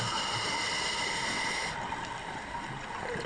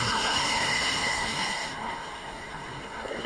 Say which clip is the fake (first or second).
second